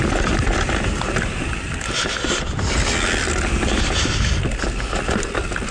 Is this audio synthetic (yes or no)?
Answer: no